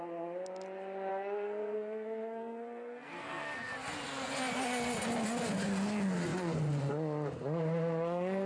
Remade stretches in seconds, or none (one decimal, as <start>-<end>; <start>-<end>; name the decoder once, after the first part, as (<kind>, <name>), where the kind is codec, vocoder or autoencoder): 1.1-3.7 (codec, SNAC)